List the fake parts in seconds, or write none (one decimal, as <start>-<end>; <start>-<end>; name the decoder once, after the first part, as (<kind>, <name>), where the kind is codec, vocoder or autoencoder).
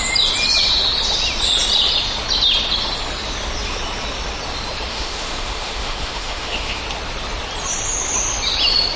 4.9-6.8 (autoencoder, DAC-VAE)